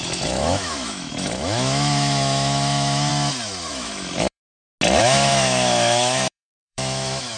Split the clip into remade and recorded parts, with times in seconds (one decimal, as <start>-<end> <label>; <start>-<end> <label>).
0.0-3.1 remade; 3.1-3.7 recorded; 3.7-4.4 remade; 4.4-5.0 recorded; 5.0-7.4 remade